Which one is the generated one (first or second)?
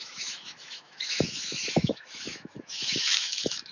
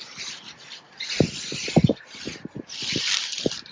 first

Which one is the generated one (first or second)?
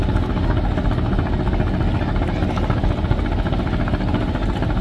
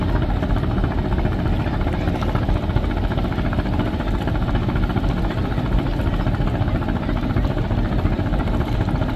second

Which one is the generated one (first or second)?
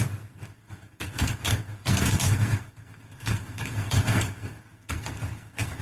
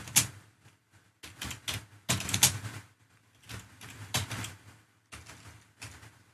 first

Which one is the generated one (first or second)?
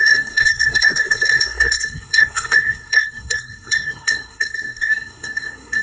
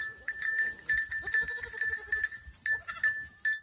first